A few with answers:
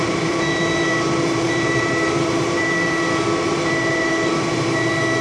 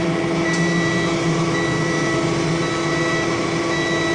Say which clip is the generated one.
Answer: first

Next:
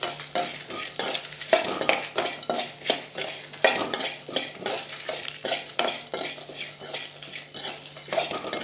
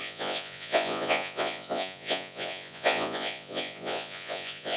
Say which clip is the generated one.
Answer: second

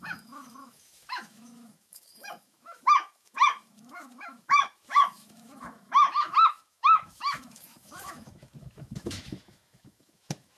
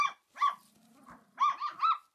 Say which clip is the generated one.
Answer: first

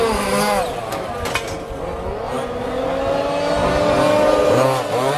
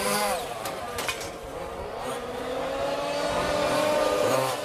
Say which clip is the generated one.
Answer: second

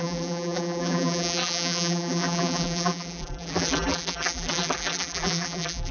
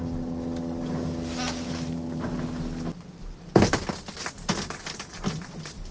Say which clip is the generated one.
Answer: first